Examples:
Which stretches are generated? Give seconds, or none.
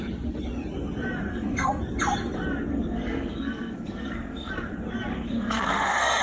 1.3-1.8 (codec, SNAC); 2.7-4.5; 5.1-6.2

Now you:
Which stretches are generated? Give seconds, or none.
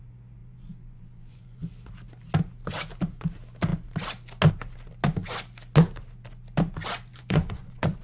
0.4-1.6 (vocoder, Vocos); 7.1-8.0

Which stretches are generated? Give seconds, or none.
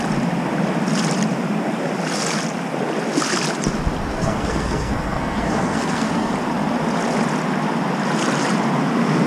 4.1-6.3 (codec, SNAC)